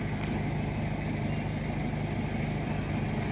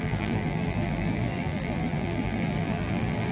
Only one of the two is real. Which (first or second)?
first